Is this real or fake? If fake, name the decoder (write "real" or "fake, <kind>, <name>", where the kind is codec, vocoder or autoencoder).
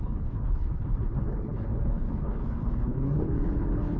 fake, codec, HILCodec